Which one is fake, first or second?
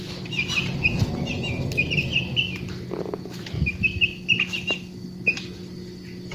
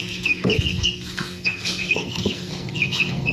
second